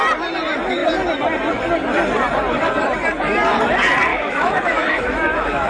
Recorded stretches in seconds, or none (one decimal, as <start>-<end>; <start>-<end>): 0.0-4.1